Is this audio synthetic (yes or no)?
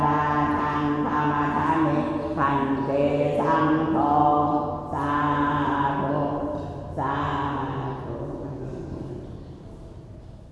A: no